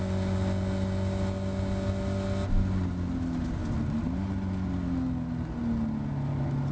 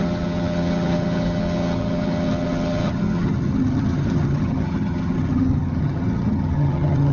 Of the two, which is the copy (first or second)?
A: second